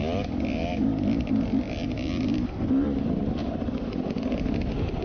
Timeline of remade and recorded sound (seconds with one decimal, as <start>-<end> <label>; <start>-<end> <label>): 0.0-5.0 recorded